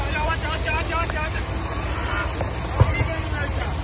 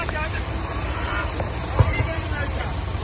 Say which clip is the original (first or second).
first